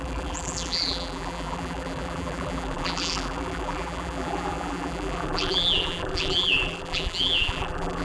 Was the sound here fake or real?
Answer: fake